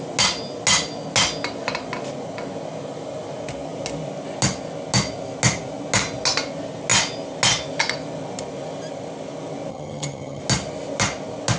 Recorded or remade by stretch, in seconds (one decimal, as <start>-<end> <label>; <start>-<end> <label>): 0.0-9.7 recorded; 9.7-10.4 remade; 10.4-11.6 recorded